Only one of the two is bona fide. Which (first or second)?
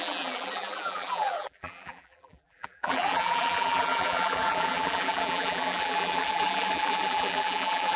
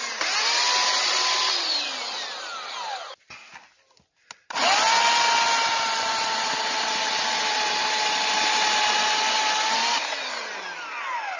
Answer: second